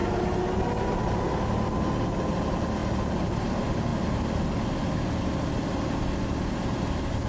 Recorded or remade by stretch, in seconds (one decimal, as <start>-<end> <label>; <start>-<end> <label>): 0.0-7.3 recorded